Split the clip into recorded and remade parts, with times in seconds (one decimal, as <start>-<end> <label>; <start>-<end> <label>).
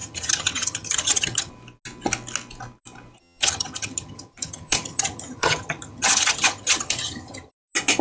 0.0-1.5 remade; 1.5-3.2 recorded; 3.2-7.5 remade; 7.5-8.0 recorded